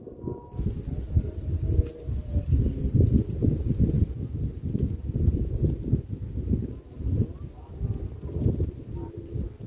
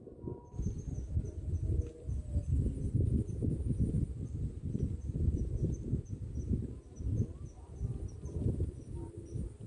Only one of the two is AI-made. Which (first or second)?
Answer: second